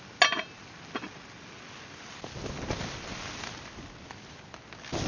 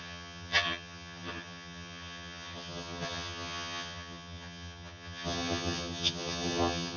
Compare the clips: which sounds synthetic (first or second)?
second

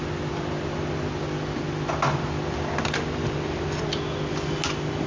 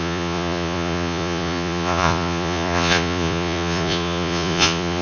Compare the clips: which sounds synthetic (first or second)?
second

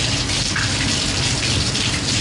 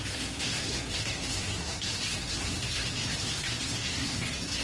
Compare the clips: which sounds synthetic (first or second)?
second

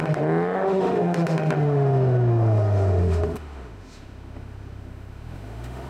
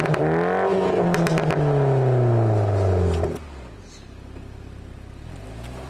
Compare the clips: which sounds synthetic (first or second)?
first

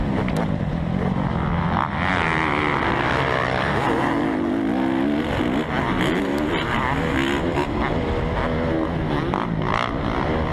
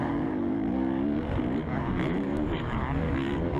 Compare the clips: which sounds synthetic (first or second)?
second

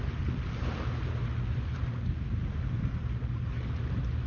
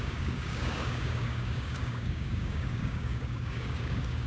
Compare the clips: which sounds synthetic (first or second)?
second